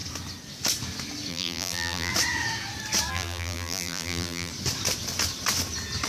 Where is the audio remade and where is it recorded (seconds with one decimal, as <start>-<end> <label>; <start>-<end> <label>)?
0.0-1.3 recorded; 1.3-2.1 remade; 2.1-3.1 recorded; 3.1-4.5 remade; 4.5-6.1 recorded